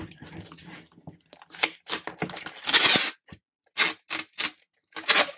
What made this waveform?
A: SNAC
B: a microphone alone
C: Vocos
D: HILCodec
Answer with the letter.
B